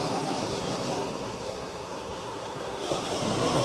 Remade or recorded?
remade